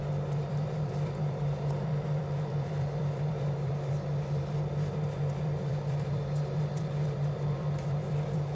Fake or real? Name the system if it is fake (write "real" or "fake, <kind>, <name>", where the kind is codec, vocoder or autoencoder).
fake, vocoder, BigVGAN v2